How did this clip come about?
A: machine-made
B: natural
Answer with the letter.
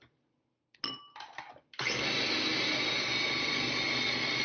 B